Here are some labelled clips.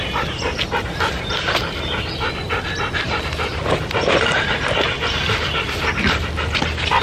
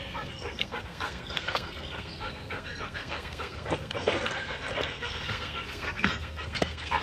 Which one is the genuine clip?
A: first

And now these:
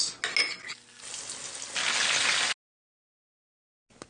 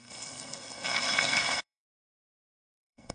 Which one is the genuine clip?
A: first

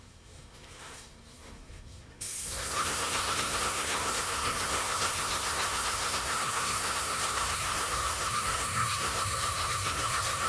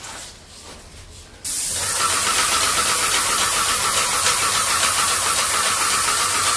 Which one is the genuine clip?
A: second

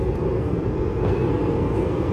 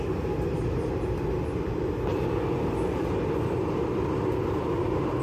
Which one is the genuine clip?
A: second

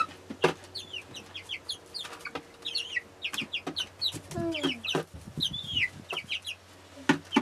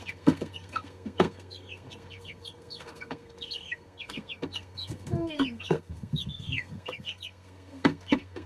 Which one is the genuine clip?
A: first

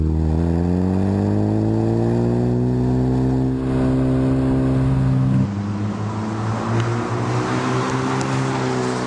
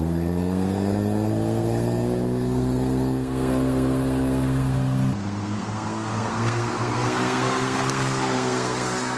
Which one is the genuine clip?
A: first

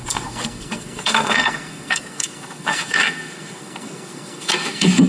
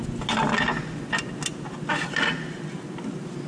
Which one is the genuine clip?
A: second